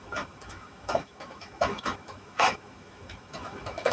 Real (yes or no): no